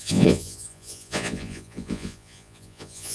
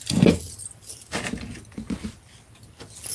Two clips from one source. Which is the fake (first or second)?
first